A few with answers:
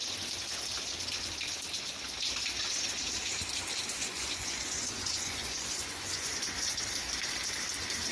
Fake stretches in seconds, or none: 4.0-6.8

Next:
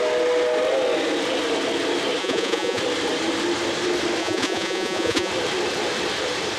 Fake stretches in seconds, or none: 2.2-2.8; 4.2-5.3

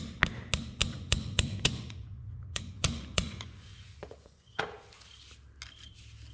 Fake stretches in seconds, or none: 0.8-4.6

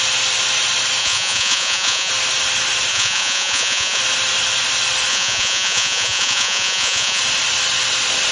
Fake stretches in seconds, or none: 1.0-2.1; 2.9-4.0; 5.1-7.2